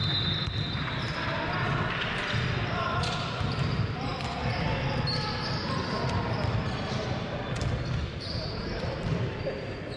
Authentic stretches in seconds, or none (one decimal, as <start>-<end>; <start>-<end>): 0.0-1.9; 4.1-5.4